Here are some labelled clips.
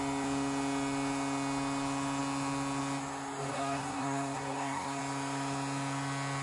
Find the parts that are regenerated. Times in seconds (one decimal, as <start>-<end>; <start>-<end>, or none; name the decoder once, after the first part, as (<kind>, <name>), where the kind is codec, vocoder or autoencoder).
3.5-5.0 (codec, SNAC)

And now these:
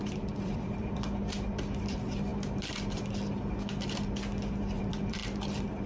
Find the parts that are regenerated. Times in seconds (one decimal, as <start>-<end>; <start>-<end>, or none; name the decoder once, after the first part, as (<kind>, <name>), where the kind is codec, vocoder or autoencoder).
0.0-2.3 (vocoder, BigVGAN v2); 4.7-5.2

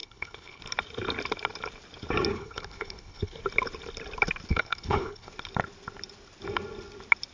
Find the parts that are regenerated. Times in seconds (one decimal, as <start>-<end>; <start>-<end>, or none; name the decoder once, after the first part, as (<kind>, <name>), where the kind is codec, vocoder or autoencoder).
0.0-0.6 (codec, HILCodec); 2.3-3.4; 4.5-5.3

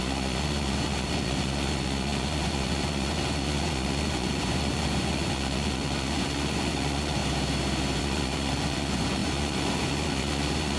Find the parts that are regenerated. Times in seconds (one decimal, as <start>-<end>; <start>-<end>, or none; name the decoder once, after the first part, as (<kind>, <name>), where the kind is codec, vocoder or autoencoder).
0.0-7.2 (vocoder, Vocos); 8.0-10.8

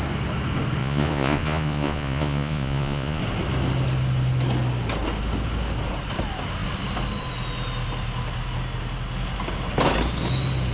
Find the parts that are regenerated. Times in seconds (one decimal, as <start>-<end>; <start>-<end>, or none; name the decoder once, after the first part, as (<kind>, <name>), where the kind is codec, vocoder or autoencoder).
0.8-3.2 (vocoder, Vocos)

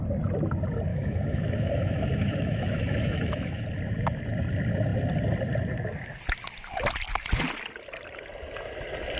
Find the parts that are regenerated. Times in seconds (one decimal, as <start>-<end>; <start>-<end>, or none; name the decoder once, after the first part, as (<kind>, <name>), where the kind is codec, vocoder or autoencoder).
0.9-3.6 (autoencoder, DAC-VAE)

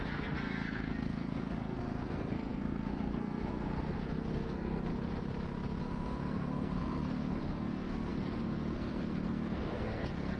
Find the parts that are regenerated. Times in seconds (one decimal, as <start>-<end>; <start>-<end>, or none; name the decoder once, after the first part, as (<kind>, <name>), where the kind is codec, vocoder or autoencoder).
0.0-4.9 (codec, SNAC); 5.8-10.4

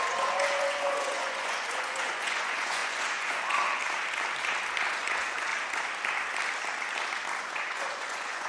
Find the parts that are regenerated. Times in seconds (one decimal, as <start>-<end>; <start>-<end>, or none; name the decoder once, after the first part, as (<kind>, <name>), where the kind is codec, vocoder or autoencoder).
0.0-3.8 (vocoder, Vocos); 4.9-5.5; 7.4-8.5